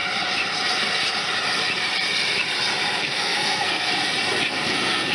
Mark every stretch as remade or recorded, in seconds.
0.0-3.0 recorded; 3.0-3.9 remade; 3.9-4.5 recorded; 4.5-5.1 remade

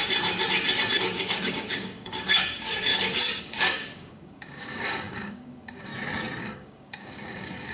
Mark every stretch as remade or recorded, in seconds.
0.0-1.0 recorded; 1.0-2.9 remade; 2.9-3.4 recorded; 3.4-5.9 remade; 5.9-6.4 recorded; 6.4-7.7 remade

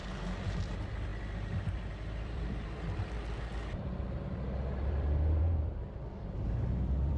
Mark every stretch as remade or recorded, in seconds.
0.0-7.2 remade